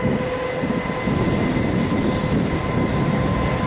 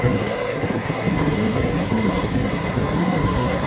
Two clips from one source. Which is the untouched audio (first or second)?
first